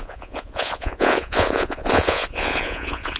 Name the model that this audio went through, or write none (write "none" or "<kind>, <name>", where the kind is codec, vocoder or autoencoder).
vocoder, Vocos